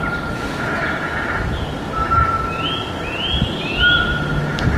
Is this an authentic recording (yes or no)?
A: yes